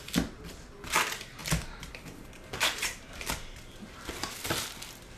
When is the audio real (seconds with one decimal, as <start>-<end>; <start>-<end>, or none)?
0.0-1.4; 4.5-5.2

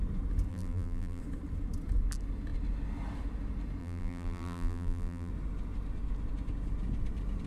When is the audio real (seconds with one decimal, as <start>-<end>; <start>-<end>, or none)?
0.0-0.5; 1.2-3.8; 5.3-7.5

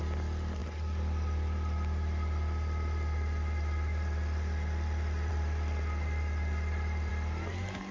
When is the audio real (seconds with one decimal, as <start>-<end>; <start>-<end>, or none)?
0.0-7.9

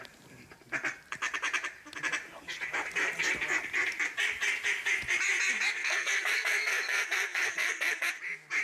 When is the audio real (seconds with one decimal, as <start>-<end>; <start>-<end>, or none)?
0.0-5.8; 8.1-8.6

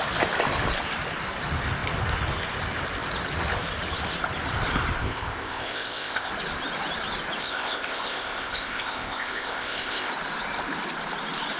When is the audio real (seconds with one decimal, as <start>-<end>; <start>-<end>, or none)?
0.0-5.0; 6.3-7.4; 10.1-11.6

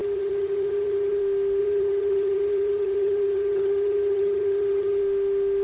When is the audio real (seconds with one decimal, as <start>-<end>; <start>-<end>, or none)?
1.2-1.6; 5.0-5.6

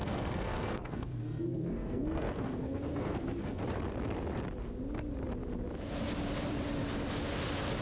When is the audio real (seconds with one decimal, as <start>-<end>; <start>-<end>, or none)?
3.6-7.8